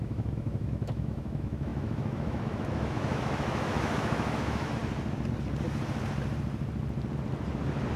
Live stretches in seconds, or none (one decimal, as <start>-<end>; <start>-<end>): 4.8-8.0